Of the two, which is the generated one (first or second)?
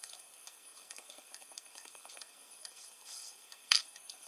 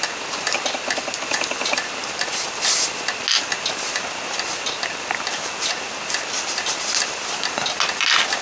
first